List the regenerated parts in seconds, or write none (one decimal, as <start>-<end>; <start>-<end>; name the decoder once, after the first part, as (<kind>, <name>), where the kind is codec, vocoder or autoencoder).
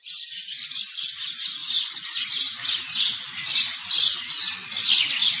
none